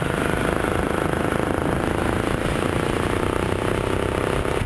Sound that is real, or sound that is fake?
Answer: real